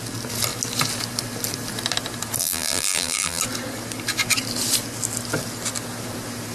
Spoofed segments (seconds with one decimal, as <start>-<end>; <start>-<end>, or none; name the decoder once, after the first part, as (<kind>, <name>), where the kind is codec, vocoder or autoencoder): 2.4-3.4 (vocoder, BigVGAN v2)